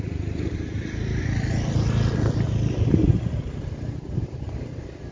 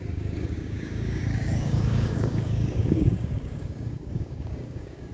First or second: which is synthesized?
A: second